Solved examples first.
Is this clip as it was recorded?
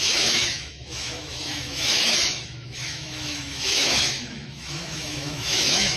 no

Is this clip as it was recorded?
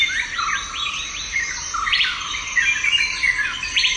yes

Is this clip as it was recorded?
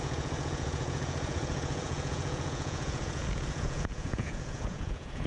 no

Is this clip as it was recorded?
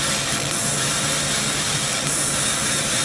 yes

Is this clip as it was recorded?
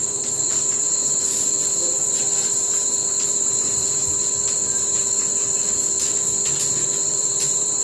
no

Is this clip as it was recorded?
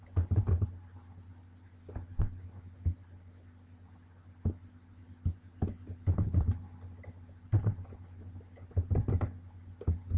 yes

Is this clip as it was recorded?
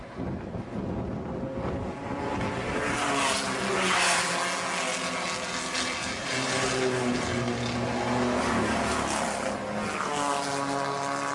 yes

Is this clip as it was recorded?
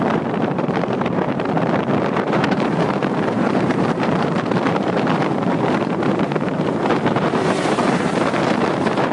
no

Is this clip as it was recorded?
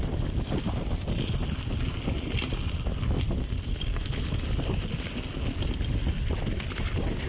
yes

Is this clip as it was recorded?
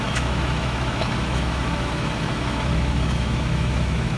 no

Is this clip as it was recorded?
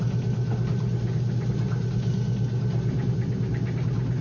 yes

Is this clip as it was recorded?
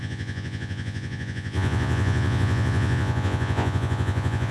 no